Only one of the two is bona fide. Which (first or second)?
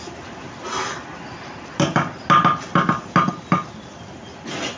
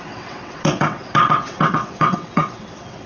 first